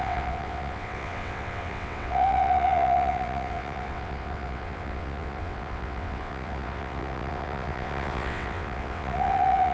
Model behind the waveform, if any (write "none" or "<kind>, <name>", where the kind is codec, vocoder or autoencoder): vocoder, WaveNeXt